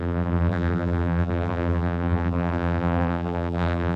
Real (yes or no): no